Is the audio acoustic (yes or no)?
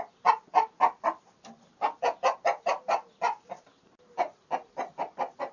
yes